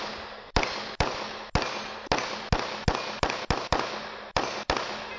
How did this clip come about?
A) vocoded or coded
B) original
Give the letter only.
B